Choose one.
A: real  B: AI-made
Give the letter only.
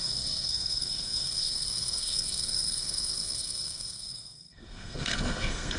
B